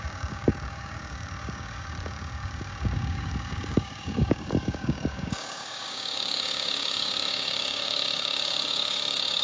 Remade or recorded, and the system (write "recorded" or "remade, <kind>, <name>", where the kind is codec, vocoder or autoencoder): remade, codec, DAC